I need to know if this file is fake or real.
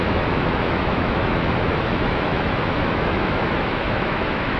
fake